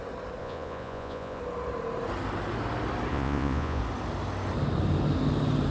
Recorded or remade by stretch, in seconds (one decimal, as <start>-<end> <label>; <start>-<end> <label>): 0.0-0.4 recorded; 0.4-1.4 remade; 1.4-3.1 recorded; 3.1-3.8 remade; 3.8-5.7 recorded